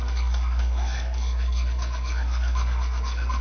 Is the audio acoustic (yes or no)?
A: no